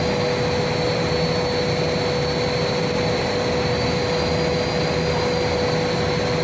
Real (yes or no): yes